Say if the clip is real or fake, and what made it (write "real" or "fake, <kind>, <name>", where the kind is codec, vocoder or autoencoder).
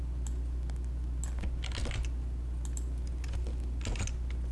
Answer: real